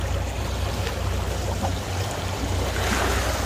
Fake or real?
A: real